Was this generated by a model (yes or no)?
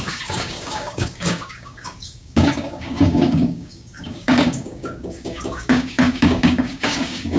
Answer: yes